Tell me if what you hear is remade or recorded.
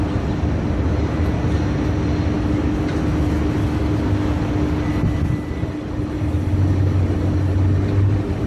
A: recorded